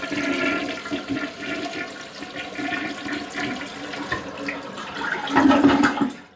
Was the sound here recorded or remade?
recorded